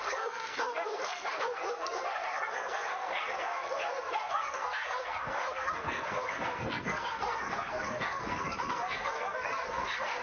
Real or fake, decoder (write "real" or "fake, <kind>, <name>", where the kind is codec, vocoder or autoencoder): fake, codec, SNAC